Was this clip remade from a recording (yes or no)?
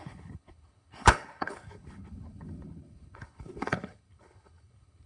yes